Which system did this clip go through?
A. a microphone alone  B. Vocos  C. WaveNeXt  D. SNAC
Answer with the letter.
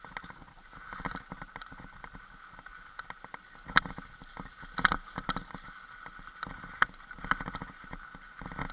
A